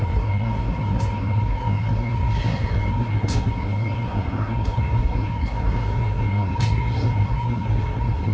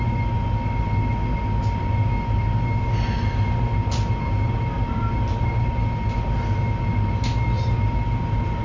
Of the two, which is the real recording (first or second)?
second